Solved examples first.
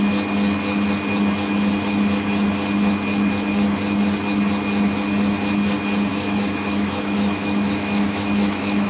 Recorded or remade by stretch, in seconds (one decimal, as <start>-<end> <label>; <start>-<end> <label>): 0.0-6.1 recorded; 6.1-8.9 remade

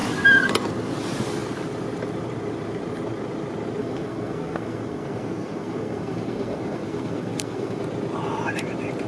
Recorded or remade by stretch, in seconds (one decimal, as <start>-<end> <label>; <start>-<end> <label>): 0.0-3.8 recorded; 3.8-7.8 remade; 7.8-9.1 recorded

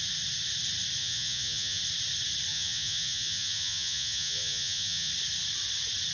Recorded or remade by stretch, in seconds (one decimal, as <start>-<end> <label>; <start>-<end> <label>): 0.0-1.0 recorded; 1.0-1.8 remade; 1.8-2.5 recorded; 2.5-5.1 remade; 5.1-6.1 recorded

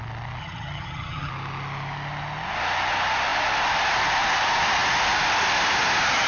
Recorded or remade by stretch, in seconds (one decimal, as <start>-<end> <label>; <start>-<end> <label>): 0.0-0.4 recorded; 0.4-1.3 remade; 1.3-6.3 recorded